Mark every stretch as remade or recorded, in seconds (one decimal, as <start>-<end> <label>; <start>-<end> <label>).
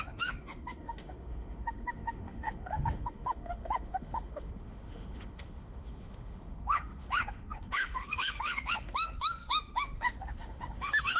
0.0-11.2 remade